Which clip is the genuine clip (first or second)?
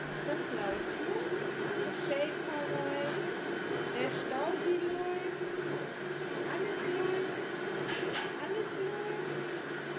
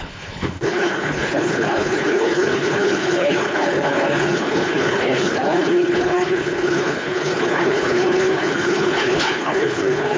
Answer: first